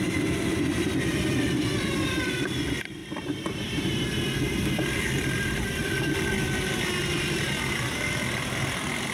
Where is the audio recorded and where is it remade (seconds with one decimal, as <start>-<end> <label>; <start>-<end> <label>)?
0.0-9.1 remade